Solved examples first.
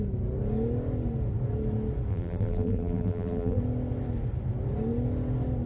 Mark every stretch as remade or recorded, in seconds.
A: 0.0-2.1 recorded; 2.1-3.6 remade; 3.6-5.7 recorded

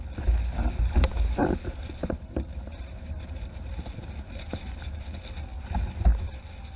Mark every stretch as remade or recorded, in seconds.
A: 0.0-1.4 recorded; 1.4-5.4 remade; 5.4-6.8 recorded

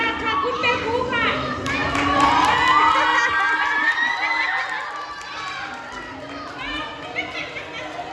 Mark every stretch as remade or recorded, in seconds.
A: 0.0-8.1 recorded

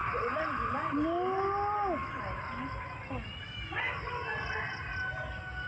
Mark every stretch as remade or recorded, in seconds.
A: 0.0-5.7 recorded

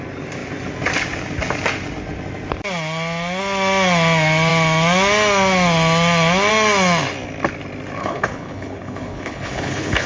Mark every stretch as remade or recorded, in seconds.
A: 0.0-8.0 recorded; 8.0-10.1 remade

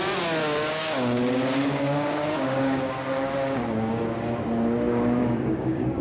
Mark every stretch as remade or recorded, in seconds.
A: 0.0-0.4 recorded; 0.4-4.0 remade; 4.0-5.2 recorded; 5.2-6.0 remade